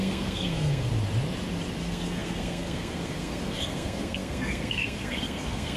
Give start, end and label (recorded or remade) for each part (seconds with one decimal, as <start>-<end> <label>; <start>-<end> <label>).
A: 0.0-0.9 remade; 0.9-1.8 recorded; 1.8-5.8 remade